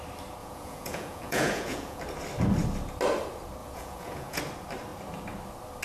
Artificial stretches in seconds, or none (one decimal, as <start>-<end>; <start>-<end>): 0.4-2.0; 3.6-4.4